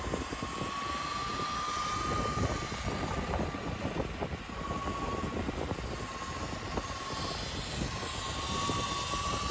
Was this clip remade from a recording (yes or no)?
no